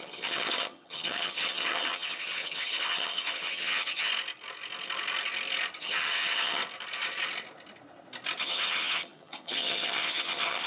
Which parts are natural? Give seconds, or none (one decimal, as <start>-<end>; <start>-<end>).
4.1-5.8; 6.6-8.4